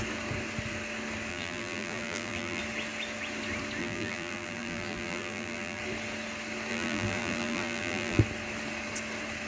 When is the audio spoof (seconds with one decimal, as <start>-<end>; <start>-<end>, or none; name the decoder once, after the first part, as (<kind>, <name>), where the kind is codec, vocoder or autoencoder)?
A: 1.3-2.6 (vocoder, BigVGAN v2); 3.8-5.8; 6.7-8.2